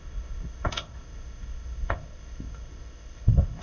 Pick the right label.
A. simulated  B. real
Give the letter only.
A